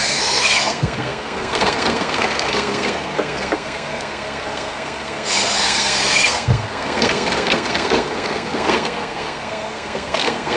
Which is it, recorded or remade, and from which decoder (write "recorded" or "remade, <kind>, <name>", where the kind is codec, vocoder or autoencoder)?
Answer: remade, codec, SNAC